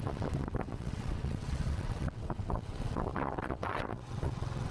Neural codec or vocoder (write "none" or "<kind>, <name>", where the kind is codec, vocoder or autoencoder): vocoder, WaveNeXt